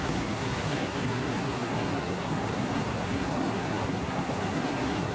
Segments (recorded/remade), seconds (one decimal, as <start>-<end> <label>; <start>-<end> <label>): 0.0-5.1 remade